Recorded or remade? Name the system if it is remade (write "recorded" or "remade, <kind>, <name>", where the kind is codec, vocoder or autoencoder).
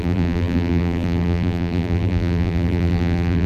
remade, vocoder, BigVGAN v2